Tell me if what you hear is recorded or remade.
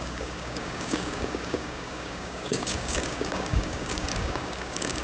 remade